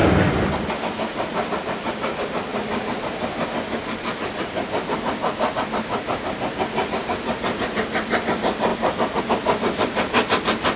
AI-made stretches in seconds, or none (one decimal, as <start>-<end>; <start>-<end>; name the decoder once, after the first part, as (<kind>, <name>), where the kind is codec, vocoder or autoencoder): 1.1-1.9 (vocoder, BigVGAN v2)

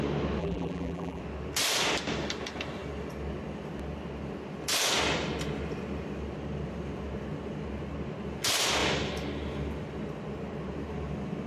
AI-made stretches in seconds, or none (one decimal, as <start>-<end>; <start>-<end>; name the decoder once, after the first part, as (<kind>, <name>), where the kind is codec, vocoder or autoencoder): 0.4-1.2 (vocoder, BigVGAN v2)

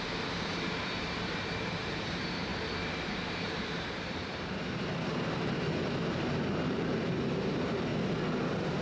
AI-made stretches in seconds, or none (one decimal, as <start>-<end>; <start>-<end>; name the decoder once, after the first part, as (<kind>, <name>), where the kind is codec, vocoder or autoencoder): 0.0-7.9 (vocoder, BigVGAN v2)

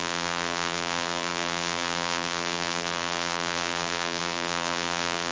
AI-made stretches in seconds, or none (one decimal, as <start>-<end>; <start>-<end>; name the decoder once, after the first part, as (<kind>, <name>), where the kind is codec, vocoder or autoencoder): 0.0-5.3 (vocoder, BigVGAN v2)